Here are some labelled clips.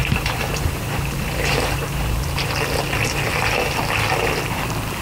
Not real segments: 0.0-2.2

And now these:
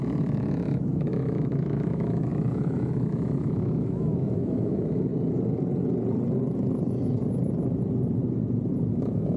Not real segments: 0.0-5.1; 8.9-9.4

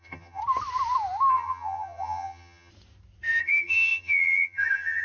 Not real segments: 0.0-0.4; 1.3-2.7; 3.4-5.0

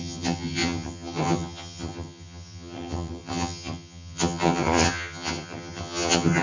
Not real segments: 0.0-6.4